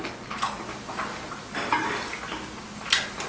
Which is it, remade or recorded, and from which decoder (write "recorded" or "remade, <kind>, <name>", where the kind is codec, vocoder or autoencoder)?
recorded